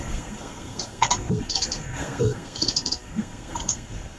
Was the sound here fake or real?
fake